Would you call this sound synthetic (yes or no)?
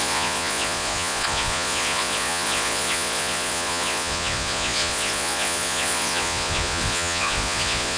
yes